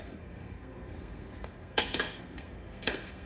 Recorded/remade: remade